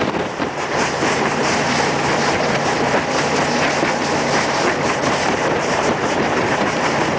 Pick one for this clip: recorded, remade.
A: remade